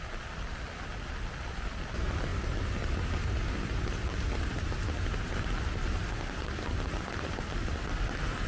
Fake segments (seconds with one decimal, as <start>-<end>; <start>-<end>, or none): none